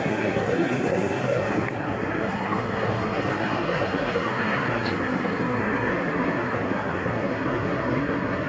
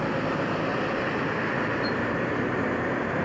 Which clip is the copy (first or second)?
first